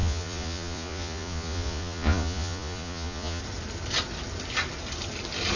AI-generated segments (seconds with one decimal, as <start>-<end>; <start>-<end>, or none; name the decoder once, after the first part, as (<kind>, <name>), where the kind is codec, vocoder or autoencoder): 0.0-3.4 (vocoder, Vocos)